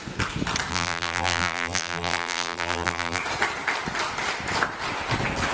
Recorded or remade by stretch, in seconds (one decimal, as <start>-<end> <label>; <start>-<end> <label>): 0.0-0.7 recorded; 0.7-3.2 remade; 3.2-5.5 recorded